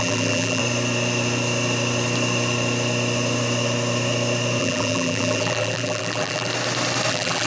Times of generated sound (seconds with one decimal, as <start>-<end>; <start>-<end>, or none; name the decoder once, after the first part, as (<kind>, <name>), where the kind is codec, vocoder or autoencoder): 0.0-0.6 (vocoder, BigVGAN v2); 4.6-6.5; 7.1-7.5